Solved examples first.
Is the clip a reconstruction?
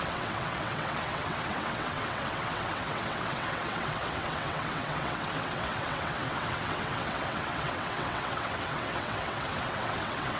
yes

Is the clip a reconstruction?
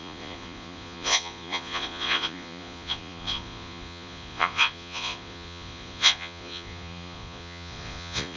yes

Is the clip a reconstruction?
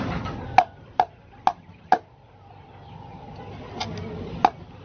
no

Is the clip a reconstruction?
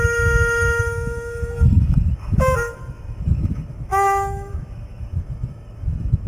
yes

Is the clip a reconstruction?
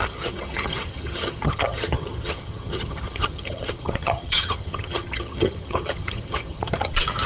yes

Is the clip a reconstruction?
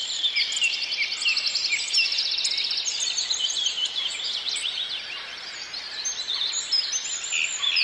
no